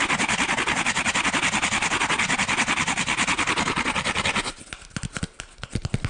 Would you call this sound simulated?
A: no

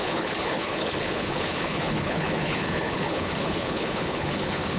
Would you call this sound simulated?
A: yes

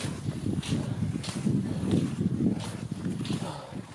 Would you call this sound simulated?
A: no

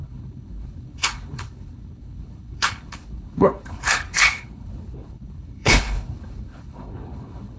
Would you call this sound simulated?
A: yes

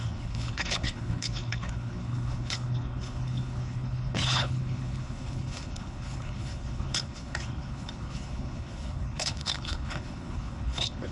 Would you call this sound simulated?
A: yes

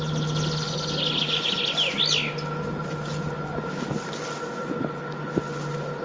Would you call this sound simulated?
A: no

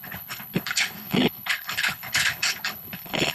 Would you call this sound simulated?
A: yes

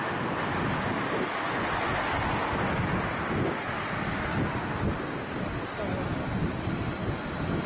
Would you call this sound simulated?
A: no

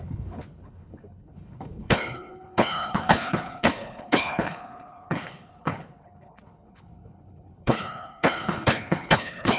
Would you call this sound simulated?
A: yes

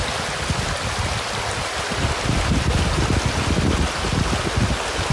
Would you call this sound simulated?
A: no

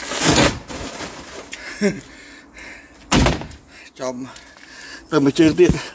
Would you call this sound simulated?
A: no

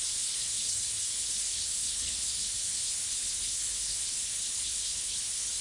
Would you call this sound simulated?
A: yes